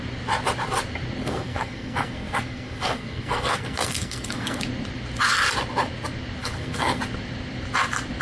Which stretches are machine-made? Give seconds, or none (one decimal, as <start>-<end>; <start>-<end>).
1.2-4.6; 6.4-7.0

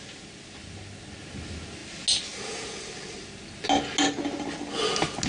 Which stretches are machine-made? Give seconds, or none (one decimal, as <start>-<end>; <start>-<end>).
none